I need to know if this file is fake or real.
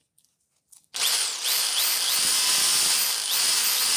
real